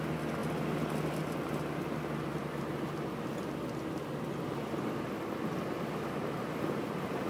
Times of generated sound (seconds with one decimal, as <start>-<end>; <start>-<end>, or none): none